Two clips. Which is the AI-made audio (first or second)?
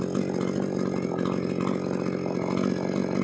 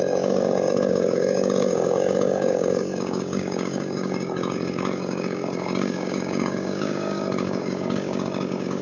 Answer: second